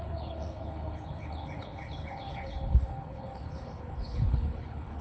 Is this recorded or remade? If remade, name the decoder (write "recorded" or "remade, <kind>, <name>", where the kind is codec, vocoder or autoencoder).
remade, codec, HILCodec